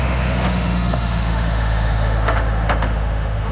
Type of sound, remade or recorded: remade